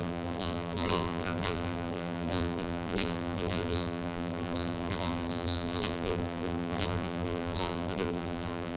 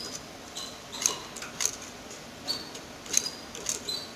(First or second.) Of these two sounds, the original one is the second